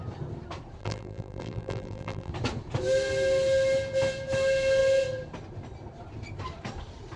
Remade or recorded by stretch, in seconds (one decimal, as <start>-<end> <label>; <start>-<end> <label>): 0.0-0.8 recorded; 0.8-2.3 remade; 2.3-7.2 recorded